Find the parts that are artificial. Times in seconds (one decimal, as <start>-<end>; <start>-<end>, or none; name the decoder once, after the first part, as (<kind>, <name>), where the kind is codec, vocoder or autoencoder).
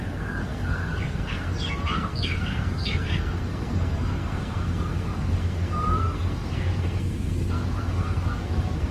0.0-8.9 (codec, SNAC)